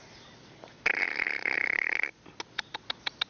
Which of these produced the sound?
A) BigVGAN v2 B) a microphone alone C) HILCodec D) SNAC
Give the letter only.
B